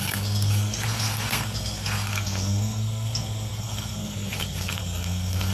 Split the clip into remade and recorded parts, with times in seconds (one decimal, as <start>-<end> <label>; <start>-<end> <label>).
0.0-5.5 remade

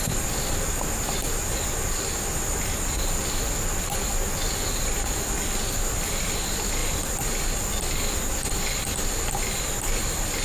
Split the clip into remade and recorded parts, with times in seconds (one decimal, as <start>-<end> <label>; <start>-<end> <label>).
0.0-10.4 recorded

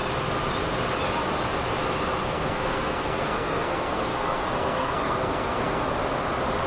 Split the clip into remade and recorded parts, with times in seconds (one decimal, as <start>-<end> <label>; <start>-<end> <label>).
0.0-2.2 recorded; 2.2-5.8 remade; 5.8-6.7 recorded

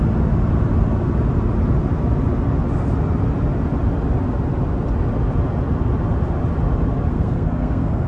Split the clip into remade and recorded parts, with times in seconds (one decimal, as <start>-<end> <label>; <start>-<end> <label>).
0.0-7.1 recorded; 7.1-8.1 remade

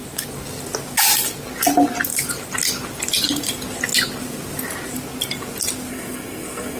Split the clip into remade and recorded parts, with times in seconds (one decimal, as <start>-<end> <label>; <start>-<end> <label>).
0.0-5.9 recorded; 5.9-6.8 remade